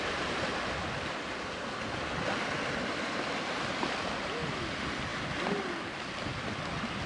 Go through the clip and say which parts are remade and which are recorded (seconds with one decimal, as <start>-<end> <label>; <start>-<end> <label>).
0.0-7.1 recorded

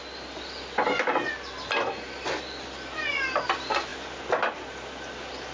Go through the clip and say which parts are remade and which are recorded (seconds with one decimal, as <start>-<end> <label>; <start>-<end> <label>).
0.0-5.5 recorded

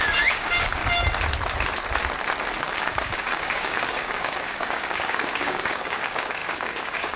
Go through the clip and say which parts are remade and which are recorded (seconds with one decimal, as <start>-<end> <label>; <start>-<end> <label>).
0.0-0.8 remade; 0.8-2.6 recorded; 2.6-7.2 remade

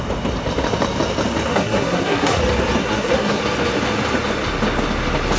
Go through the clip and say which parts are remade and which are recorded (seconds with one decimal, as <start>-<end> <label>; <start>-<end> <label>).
0.0-1.5 recorded; 1.5-2.4 remade; 2.4-2.8 recorded; 2.8-3.4 remade; 3.4-5.4 recorded

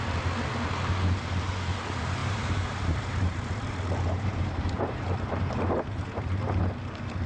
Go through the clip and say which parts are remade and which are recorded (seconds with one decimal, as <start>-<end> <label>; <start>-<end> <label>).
0.0-2.2 recorded; 2.2-6.6 remade; 6.6-7.3 recorded

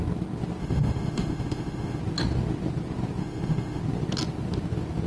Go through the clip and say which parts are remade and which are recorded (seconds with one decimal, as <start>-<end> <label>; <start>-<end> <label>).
0.0-0.6 recorded; 0.6-2.0 remade; 2.0-3.2 recorded; 3.2-3.8 remade; 3.8-5.1 recorded

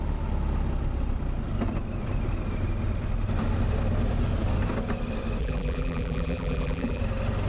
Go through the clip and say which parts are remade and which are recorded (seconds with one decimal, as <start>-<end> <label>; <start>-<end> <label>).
0.0-5.4 recorded; 5.4-7.0 remade; 7.0-7.5 recorded